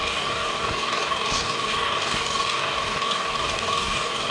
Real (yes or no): no